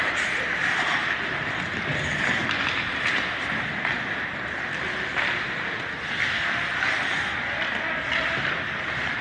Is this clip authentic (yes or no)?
yes